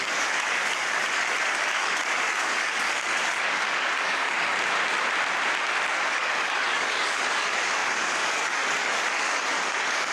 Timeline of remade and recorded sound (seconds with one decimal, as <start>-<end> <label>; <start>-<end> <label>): 0.0-4.5 remade; 4.5-5.9 recorded; 5.9-10.1 remade